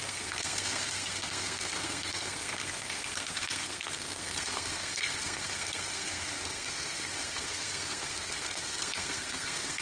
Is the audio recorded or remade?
remade